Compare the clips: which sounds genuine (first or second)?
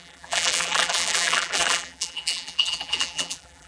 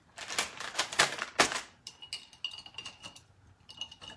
second